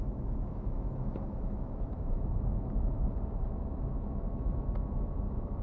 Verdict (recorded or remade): remade